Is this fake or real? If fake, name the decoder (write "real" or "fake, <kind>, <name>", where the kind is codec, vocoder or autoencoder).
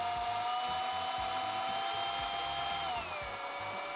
real